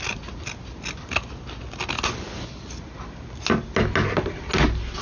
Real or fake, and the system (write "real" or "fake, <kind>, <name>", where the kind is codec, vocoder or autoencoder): real